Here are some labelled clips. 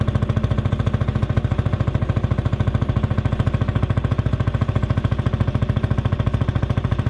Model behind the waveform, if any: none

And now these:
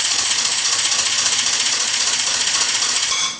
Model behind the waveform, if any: vocoder, Vocos